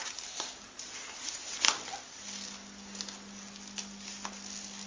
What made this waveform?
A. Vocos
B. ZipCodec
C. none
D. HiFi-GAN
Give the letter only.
C